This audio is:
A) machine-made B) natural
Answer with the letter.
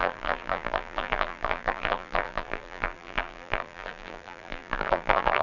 A